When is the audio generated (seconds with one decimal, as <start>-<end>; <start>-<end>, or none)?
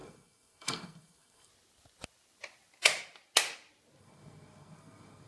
0.0-1.5; 4.0-5.3